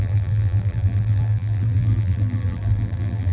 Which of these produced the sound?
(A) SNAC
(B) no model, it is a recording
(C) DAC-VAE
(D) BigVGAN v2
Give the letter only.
D